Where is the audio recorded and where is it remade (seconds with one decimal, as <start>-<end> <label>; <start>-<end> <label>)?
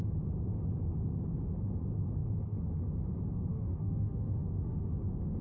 0.0-3.5 recorded; 3.5-5.0 remade; 5.0-5.4 recorded